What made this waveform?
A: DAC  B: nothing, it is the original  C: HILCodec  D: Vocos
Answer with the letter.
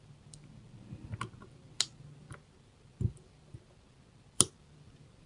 B